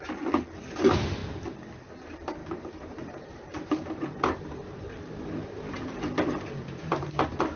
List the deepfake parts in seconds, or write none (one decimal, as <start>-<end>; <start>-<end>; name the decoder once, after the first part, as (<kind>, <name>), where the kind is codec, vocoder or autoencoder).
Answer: 0.0-7.6 (vocoder, BigVGAN v2)